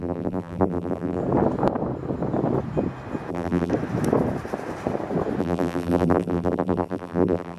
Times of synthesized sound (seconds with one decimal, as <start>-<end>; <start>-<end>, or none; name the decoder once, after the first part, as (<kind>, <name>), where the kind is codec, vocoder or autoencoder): 0.0-1.2 (vocoder, BigVGAN v2); 3.3-3.7; 5.4-7.6